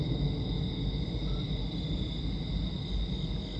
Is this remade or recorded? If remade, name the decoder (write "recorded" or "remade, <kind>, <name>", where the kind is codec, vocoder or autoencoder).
recorded